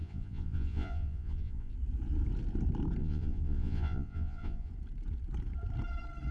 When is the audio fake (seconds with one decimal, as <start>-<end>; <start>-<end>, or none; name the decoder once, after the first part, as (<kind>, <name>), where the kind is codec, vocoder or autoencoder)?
0.0-1.7 (vocoder, Vocos); 3.0-4.7